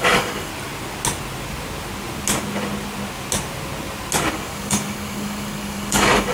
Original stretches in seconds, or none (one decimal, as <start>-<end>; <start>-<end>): 0.5-4.3